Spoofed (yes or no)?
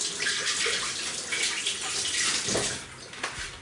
no